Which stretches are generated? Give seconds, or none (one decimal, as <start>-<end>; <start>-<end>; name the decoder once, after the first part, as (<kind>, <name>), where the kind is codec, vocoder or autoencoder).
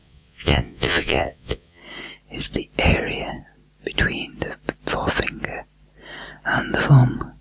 0.0-1.8 (vocoder, Vocos)